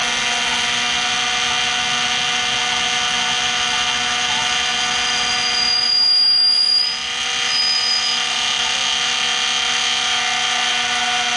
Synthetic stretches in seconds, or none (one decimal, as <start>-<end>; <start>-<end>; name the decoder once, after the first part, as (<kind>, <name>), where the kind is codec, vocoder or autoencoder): none